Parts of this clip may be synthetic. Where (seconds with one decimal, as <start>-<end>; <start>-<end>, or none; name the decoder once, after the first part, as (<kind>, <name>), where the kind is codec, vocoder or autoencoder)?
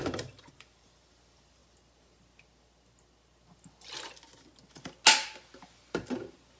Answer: 0.0-1.6 (vocoder, BigVGAN v2); 5.6-6.6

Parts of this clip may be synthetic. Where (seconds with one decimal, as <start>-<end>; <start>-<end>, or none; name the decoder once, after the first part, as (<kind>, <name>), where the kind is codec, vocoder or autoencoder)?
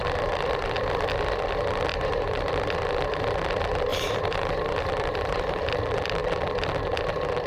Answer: 1.9-2.5 (vocoder, BigVGAN v2); 3.9-5.6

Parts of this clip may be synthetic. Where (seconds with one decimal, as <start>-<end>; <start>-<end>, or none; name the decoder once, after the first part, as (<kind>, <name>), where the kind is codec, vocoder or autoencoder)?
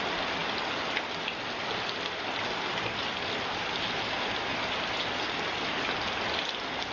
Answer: none